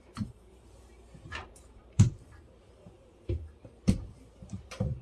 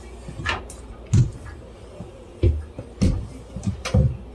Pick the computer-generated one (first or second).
first